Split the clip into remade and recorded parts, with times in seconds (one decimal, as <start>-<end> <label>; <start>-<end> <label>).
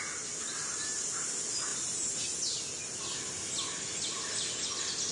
0.0-5.1 recorded